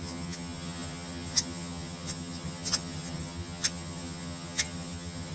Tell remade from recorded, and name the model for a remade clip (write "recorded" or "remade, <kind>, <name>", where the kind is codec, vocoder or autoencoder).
remade, vocoder, HiFi-GAN